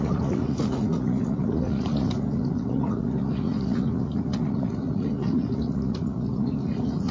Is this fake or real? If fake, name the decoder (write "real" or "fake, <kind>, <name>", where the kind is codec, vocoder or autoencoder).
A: fake, vocoder, Vocos